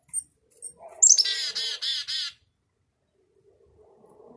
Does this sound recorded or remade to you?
recorded